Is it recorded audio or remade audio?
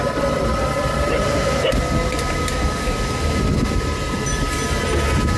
recorded